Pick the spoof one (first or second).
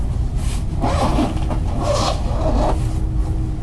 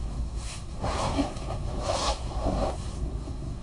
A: second